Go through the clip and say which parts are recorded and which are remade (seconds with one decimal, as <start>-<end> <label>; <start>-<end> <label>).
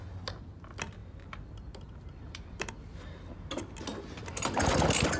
0.0-1.0 recorded; 1.0-2.7 remade; 2.7-5.2 recorded